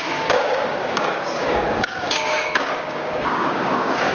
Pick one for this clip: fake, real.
fake